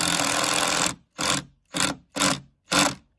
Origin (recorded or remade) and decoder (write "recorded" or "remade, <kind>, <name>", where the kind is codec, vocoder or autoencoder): recorded